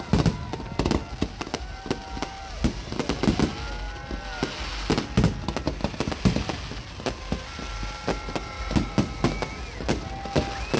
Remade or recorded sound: recorded